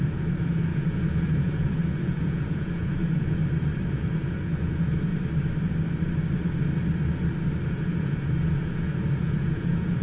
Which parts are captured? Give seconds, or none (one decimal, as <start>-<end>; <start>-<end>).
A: 3.4-3.9; 5.1-7.7